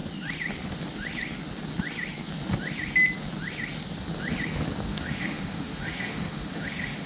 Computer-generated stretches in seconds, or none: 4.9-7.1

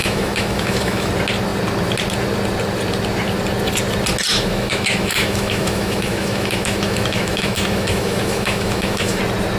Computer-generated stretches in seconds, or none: 0.0-1.1; 4.3-9.2

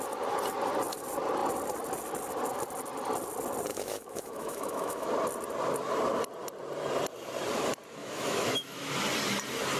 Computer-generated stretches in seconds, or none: 3.7-5.1; 8.0-8.9

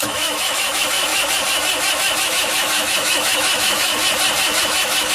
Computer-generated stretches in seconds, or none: 0.0-1.1; 2.3-3.9; 4.6-5.1

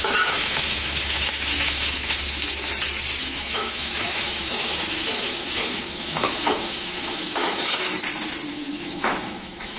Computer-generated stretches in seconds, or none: 0.0-2.7; 3.2-7.9; 8.5-9.8

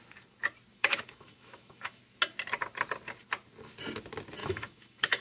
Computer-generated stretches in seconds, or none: 0.7-2.0; 4.4-5.2

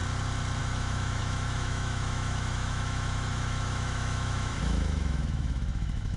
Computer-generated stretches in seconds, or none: 0.6-6.2